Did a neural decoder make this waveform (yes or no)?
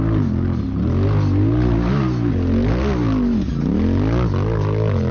no